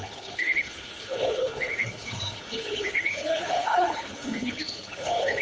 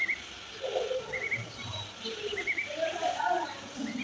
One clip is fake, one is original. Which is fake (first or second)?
first